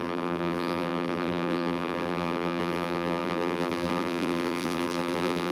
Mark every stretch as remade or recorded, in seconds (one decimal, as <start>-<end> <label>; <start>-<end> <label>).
0.0-5.5 remade